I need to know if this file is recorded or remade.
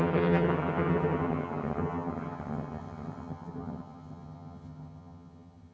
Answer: remade